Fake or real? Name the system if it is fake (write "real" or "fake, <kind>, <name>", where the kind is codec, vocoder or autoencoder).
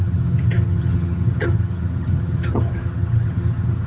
fake, vocoder, HiFi-GAN